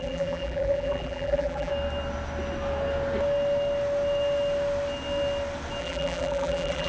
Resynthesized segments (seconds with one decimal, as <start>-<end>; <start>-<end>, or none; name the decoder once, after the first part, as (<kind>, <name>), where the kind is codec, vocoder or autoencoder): 0.0-1.7 (vocoder, BigVGAN v2); 5.8-6.9

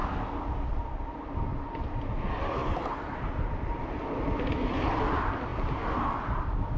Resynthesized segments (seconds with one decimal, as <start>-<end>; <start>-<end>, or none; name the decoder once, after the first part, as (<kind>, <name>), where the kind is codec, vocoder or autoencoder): 0.5-1.5 (vocoder, BigVGAN v2); 2.2-2.6; 4.3-5.5; 6.1-6.8

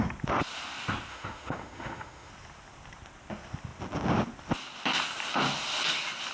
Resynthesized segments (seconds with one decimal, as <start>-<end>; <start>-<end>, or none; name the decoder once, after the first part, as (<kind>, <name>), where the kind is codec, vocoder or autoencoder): 1.1-2.3 (autoencoder, DAC-VAE)

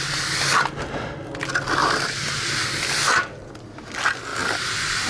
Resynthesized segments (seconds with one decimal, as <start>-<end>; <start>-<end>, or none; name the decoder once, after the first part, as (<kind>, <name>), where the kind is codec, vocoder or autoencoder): 1.8-2.4 (vocoder, BigVGAN v2)

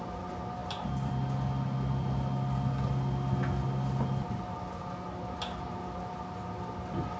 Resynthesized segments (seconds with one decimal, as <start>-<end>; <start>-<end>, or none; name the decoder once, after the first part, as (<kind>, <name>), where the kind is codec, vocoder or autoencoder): none

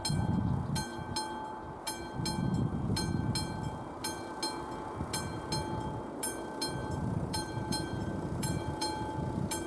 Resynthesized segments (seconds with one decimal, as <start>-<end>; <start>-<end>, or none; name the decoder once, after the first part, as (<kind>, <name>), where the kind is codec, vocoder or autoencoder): 6.8-9.1 (vocoder, BigVGAN v2)

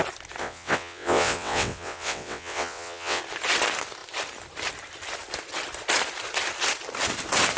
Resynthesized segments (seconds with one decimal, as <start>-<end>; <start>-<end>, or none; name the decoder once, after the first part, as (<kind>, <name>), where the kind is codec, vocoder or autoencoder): 0.4-3.2 (vocoder, WaveNeXt)